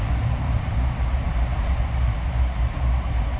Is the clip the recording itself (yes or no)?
no